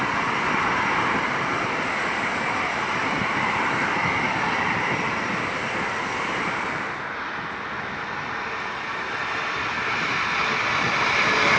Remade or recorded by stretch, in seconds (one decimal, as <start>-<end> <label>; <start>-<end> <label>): 0.0-11.6 recorded